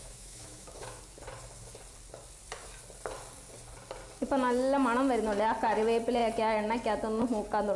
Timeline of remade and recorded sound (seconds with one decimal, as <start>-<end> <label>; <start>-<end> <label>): 0.0-1.0 remade; 1.0-7.8 recorded